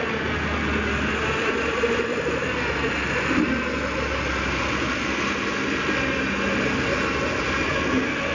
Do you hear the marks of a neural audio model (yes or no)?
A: no